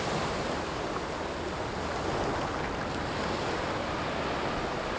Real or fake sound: real